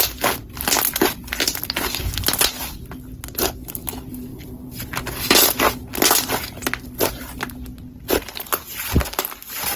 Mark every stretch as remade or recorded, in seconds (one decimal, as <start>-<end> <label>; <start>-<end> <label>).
0.0-9.8 recorded